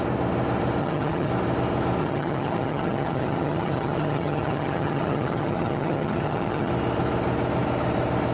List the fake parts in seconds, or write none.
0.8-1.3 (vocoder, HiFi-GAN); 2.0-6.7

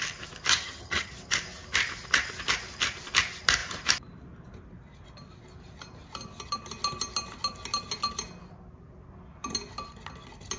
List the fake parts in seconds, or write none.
0.5-1.1 (vocoder, HiFi-GAN)

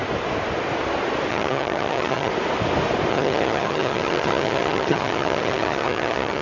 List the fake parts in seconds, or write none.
1.3-2.3 (vocoder, HiFi-GAN); 3.1-6.4

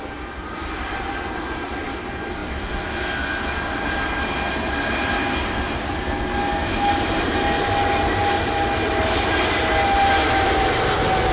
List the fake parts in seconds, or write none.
none

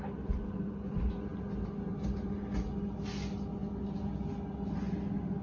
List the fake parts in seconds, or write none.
none

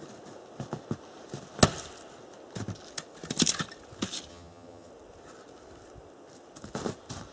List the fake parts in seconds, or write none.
4.3-4.9 (vocoder, HiFi-GAN)